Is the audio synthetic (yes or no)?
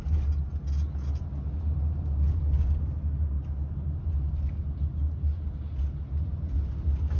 no